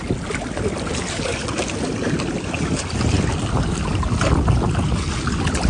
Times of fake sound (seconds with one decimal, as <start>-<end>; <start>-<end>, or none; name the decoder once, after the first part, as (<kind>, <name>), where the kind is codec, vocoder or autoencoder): none